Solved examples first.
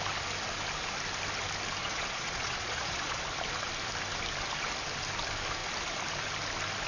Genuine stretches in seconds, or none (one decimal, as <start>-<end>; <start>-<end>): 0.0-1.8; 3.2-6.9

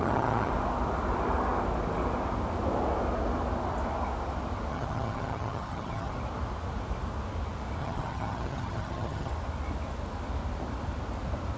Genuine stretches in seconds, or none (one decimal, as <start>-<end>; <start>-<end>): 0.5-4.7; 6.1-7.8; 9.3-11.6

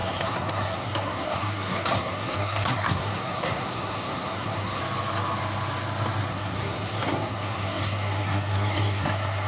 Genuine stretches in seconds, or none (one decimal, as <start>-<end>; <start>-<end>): 4.8-6.3

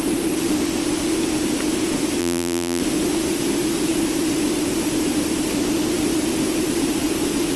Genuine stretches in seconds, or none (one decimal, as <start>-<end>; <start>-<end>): 0.0-2.2; 2.8-7.6